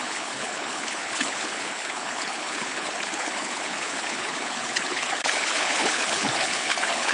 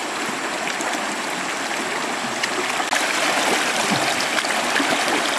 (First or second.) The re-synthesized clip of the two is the first